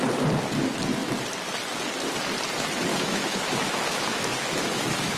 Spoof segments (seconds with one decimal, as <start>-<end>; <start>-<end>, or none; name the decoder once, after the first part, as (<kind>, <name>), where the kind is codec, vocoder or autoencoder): 2.9-5.2 (autoencoder, DAC-VAE)